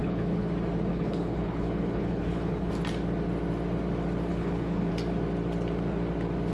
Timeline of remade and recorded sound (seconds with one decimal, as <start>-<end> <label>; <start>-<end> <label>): 0.0-0.5 remade; 0.5-0.9 recorded; 0.9-2.7 remade; 2.7-4.3 recorded; 4.3-4.9 remade; 4.9-6.5 recorded